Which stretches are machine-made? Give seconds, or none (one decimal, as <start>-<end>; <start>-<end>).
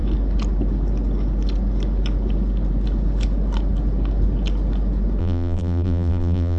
5.2-6.6